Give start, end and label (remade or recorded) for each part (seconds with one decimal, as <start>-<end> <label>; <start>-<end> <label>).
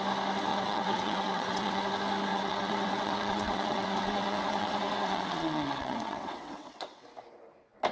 0.0-0.5 recorded; 0.5-1.9 remade; 1.9-2.3 recorded; 2.3-7.0 remade; 7.0-7.9 recorded